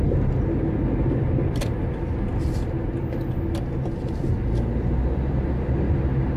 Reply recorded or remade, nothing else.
recorded